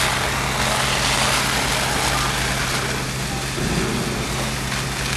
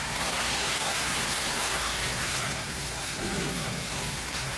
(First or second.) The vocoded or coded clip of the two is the second